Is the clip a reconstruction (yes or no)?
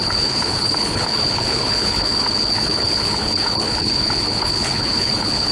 yes